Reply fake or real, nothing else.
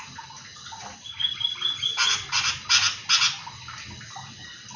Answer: real